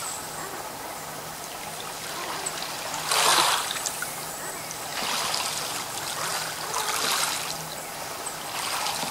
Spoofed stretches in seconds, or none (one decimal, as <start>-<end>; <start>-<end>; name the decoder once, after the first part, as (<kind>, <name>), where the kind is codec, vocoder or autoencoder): 3.3-4.3 (vocoder, BigVGAN v2)